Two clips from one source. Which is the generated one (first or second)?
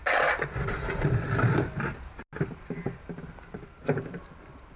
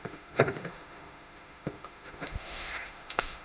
second